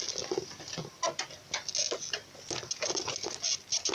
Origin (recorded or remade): recorded